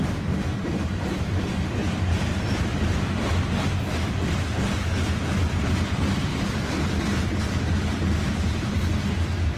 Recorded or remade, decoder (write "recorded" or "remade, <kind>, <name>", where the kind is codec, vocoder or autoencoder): remade, vocoder, BigVGAN v2